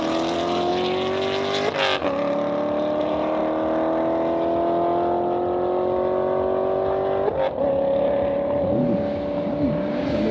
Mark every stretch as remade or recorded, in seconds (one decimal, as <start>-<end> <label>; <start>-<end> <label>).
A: 0.0-0.7 remade; 0.7-3.0 recorded; 3.0-3.4 remade; 3.4-7.6 recorded; 7.6-8.7 remade; 8.7-10.3 recorded